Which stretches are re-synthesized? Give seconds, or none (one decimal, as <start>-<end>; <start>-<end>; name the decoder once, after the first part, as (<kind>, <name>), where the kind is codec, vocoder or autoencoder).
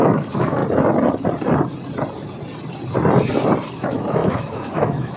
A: 0.0-0.6 (autoencoder, DAC-VAE); 3.7-5.2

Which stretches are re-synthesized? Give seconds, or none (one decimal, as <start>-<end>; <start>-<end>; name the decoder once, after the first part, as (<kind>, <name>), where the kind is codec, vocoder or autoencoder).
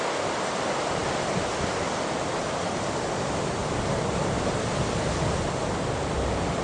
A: none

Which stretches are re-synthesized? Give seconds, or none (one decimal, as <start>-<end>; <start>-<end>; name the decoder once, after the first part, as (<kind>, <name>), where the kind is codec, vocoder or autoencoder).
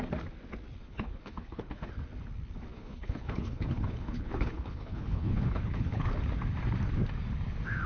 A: 0.8-1.9 (codec, HILCodec); 2.7-6.1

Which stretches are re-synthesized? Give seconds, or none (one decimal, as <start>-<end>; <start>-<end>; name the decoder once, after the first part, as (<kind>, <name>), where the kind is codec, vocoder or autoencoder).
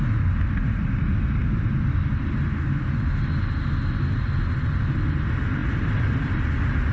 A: none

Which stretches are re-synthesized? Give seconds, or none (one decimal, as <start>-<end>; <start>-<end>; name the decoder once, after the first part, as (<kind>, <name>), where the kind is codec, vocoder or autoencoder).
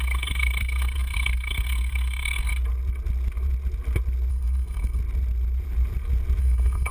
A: 0.0-2.5 (codec, SNAC); 4.3-5.0; 6.4-6.9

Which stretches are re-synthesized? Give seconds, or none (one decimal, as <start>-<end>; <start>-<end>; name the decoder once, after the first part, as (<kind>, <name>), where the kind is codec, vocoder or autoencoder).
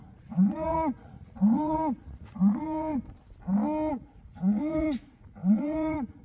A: 0.0-2.9 (vocoder, Vocos); 3.9-6.2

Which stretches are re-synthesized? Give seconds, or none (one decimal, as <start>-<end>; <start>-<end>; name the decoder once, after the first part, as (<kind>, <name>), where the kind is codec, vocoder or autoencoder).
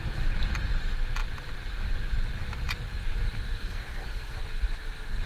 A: 3.6-4.4 (codec, SNAC)